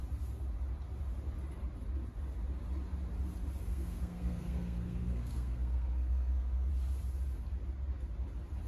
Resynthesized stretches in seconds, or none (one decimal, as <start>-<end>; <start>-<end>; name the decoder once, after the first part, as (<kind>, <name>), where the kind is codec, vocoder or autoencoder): 3.7-6.7 (codec, SNAC)